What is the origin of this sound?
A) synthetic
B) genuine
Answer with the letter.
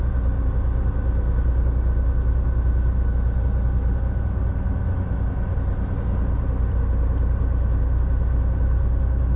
B